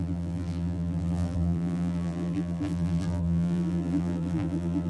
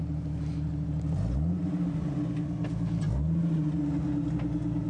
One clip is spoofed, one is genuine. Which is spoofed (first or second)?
first